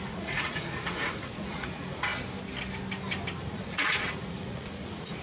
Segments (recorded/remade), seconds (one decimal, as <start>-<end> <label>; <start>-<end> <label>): 0.0-2.1 remade; 2.1-3.4 recorded; 3.4-5.2 remade

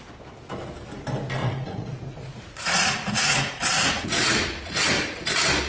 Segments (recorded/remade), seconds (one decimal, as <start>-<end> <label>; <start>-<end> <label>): 0.0-1.4 recorded; 1.4-4.8 remade; 4.8-5.7 recorded

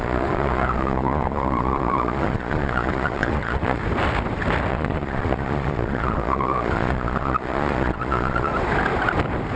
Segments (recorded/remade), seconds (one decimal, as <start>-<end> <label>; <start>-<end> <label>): 0.0-3.8 remade; 3.8-4.7 recorded; 4.7-8.5 remade; 8.5-9.6 recorded

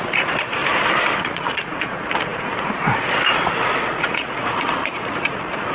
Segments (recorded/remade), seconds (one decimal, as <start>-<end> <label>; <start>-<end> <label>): 0.0-0.6 remade; 0.6-1.2 recorded; 1.2-5.7 remade

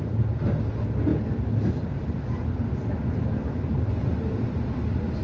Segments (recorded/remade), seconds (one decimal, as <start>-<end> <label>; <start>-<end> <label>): 0.0-5.2 recorded

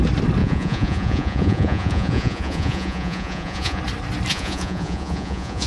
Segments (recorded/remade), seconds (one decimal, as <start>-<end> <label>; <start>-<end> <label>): 0.0-0.4 recorded; 0.4-3.8 remade; 3.8-4.3 recorded; 4.3-5.7 remade

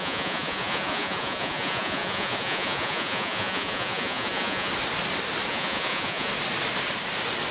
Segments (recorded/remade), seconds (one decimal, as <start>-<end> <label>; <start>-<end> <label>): 0.0-4.7 remade; 4.7-5.5 recorded; 5.5-6.3 remade; 6.3-7.5 recorded